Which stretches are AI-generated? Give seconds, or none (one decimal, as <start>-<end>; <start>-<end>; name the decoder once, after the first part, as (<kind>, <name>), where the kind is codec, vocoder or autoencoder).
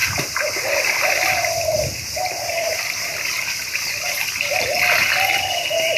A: none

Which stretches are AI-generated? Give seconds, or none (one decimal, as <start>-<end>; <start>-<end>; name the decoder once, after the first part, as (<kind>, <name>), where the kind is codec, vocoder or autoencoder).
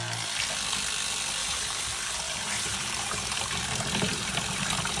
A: 1.4-4.4 (vocoder, BigVGAN v2)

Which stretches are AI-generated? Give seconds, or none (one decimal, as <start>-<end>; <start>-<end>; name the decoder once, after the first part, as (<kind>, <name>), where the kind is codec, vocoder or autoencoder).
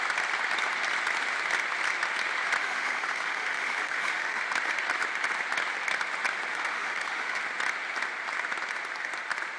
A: 2.6-4.4 (autoencoder, DAC-VAE); 6.5-7.4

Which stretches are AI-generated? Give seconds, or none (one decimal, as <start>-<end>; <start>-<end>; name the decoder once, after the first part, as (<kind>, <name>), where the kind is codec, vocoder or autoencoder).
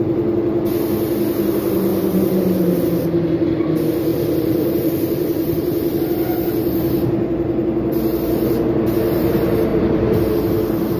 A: 4.1-6.0 (vocoder, BigVGAN v2); 9.7-10.3